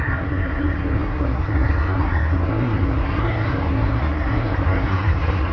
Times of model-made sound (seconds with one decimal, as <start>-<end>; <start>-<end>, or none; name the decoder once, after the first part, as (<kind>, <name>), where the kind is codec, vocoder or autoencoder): 0.0-5.5 (codec, SNAC)